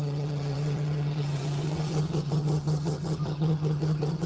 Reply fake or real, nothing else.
fake